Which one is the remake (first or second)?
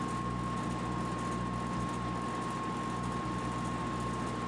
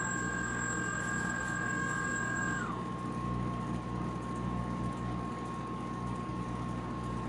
second